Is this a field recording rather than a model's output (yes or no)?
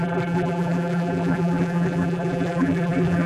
no